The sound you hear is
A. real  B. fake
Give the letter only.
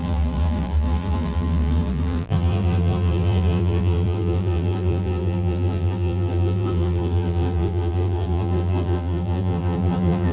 B